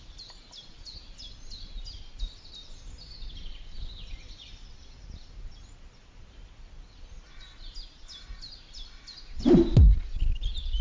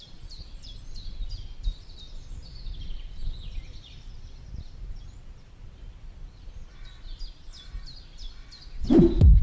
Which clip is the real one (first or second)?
first